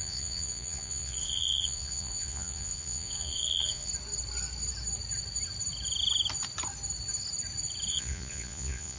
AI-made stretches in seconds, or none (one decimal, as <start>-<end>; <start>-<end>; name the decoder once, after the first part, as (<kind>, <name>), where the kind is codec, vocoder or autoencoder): 0.0-3.9 (vocoder, Vocos); 7.9-9.0